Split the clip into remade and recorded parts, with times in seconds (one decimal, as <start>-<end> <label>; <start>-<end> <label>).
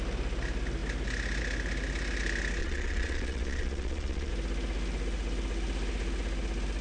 0.0-2.6 recorded; 2.6-4.3 remade; 4.3-6.8 recorded